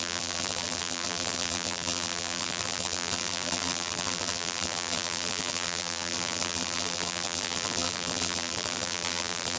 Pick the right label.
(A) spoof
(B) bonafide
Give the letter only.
A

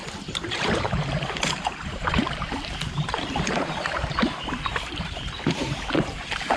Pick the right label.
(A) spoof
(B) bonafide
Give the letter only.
A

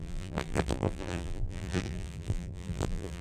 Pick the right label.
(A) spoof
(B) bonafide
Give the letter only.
A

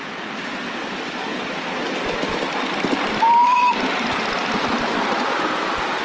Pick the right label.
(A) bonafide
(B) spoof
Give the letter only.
B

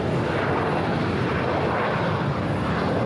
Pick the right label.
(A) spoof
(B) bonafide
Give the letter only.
B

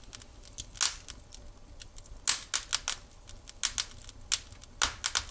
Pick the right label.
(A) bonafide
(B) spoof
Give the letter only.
A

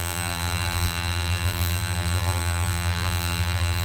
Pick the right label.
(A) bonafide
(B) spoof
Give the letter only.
B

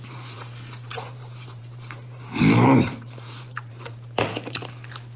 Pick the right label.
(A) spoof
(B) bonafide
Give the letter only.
A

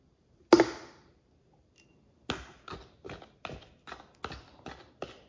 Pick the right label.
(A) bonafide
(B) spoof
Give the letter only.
A